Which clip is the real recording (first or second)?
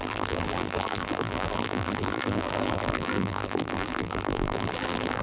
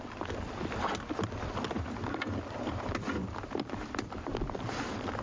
second